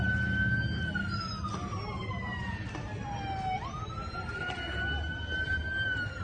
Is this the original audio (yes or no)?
yes